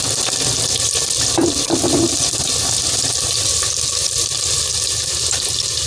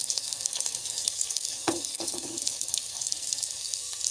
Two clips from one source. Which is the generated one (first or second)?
second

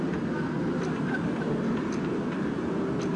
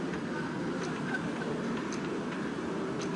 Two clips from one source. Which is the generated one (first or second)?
second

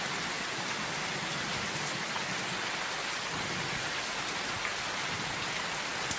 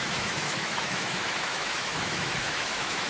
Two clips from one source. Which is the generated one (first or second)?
second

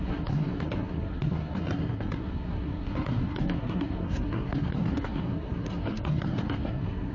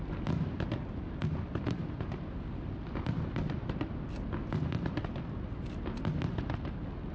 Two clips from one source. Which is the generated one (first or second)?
first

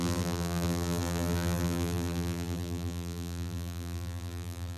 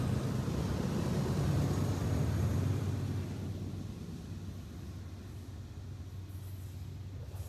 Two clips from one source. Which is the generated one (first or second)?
first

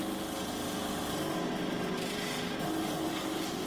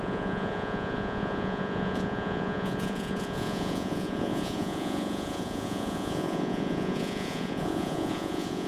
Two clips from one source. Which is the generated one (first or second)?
second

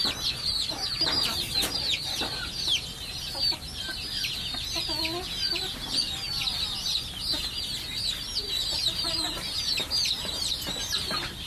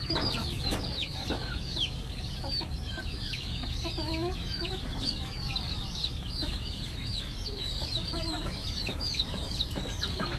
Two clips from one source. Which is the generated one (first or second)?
second